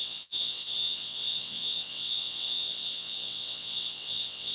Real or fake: fake